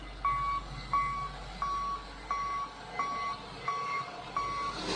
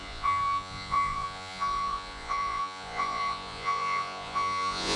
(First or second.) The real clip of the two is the first